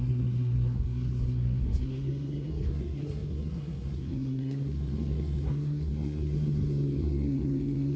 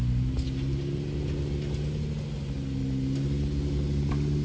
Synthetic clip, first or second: first